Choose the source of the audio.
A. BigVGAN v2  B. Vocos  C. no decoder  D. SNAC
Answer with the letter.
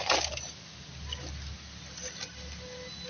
C